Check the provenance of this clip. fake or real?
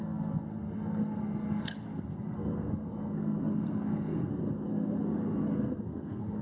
fake